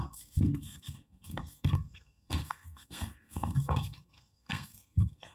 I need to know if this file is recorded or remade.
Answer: remade